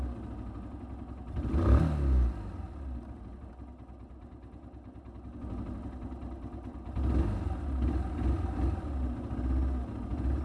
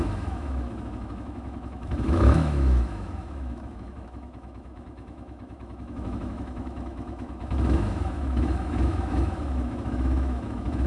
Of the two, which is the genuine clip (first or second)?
first